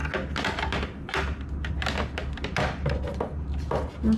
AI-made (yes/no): no